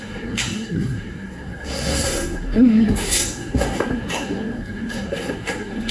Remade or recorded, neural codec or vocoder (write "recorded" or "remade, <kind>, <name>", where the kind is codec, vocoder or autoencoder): remade, codec, SNAC